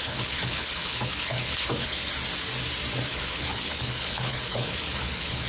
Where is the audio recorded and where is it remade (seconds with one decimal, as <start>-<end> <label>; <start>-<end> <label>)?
0.0-2.1 remade; 2.1-3.1 recorded; 3.1-5.5 remade